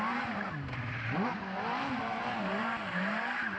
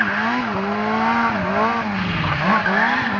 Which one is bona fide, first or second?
second